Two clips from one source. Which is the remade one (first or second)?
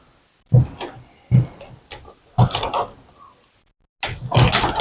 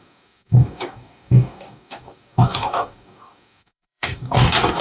second